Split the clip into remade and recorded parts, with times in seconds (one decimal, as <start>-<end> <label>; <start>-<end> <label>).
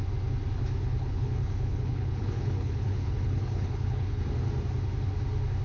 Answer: 0.0-0.8 recorded; 0.8-4.2 remade; 4.2-5.6 recorded